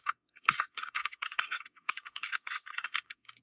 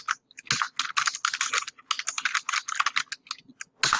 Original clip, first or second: second